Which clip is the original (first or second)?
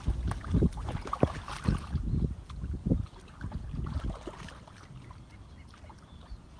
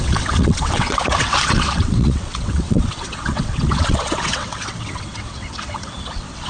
first